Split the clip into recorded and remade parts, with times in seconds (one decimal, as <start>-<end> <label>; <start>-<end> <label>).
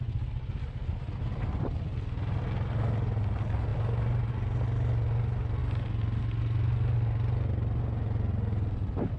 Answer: 0.0-9.2 recorded